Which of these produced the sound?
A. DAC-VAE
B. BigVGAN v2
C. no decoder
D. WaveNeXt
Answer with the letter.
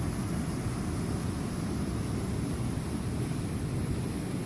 B